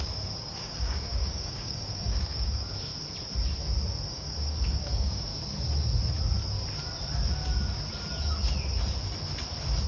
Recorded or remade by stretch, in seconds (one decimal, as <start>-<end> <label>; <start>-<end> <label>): 0.0-2.9 remade; 2.9-4.1 recorded; 4.1-5.3 remade; 5.3-9.9 recorded